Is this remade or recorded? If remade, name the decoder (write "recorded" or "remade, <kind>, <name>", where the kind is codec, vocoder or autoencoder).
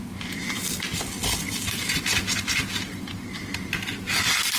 recorded